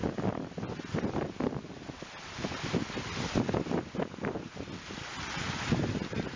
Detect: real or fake real